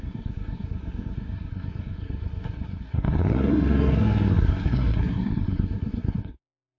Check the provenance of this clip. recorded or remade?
remade